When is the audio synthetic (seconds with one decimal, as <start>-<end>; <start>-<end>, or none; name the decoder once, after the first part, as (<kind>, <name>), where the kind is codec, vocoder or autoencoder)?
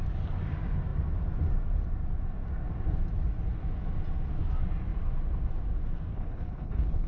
6.1-7.1 (codec, HILCodec)